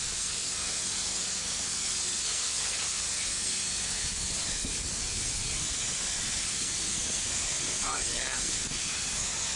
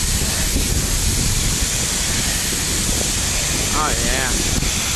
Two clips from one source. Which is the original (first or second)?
second